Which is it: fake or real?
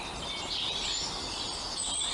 real